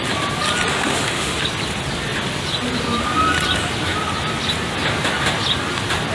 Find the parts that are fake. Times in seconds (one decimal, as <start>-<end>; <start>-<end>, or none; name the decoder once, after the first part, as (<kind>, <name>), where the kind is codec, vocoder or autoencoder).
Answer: 0.7-1.4 (autoencoder, DAC-VAE)